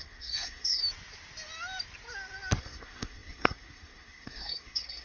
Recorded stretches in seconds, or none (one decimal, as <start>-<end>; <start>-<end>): 0.8-2.6